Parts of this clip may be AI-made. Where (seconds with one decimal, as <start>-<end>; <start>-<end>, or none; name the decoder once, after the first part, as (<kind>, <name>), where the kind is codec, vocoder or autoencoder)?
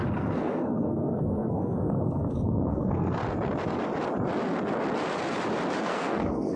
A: 0.0-3.2 (codec, SNAC); 5.8-6.6